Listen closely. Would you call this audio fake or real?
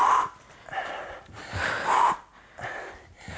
real